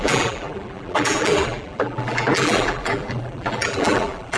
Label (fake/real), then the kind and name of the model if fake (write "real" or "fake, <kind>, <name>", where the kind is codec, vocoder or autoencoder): fake, vocoder, BigVGAN v2